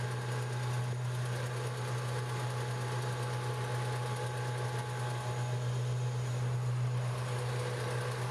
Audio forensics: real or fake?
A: real